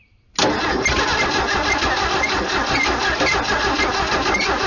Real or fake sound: real